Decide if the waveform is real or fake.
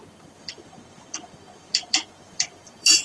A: fake